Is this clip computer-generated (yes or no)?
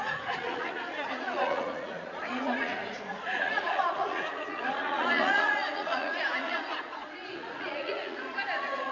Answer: yes